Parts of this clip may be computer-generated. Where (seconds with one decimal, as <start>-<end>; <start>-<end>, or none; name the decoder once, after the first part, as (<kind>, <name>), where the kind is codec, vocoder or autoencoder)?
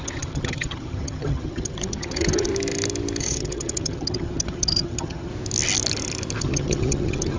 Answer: 0.0-2.5 (vocoder, HiFi-GAN); 3.2-5.3; 6.4-7.4